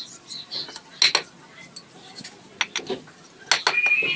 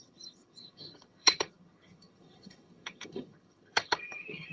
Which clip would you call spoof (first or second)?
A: second